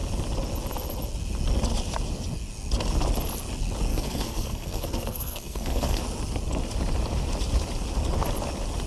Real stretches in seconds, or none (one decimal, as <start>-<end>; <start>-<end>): 0.0-3.9; 6.0-8.9